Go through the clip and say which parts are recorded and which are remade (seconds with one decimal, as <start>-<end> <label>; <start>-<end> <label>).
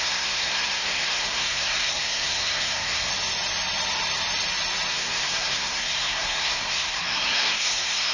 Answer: 0.0-3.1 remade; 3.1-4.9 recorded; 4.9-8.1 remade